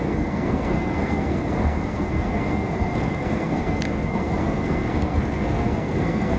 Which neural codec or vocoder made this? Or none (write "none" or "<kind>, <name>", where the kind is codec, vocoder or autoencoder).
codec, SNAC